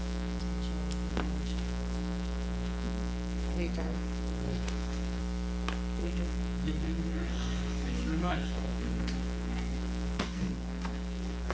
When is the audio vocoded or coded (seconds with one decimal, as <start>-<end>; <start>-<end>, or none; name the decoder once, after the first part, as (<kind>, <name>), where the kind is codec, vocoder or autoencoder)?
0.0-0.4 (codec, SNAC); 1.1-5.2; 6.0-11.5